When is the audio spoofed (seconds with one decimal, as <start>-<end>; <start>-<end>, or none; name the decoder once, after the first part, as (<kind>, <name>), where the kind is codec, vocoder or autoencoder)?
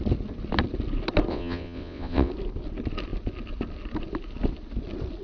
1.3-2.3 (vocoder, WaveNeXt)